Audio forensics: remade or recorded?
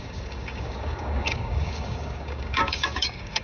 remade